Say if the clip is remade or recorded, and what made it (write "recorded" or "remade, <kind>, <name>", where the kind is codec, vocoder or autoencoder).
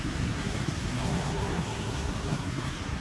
remade, codec, SNAC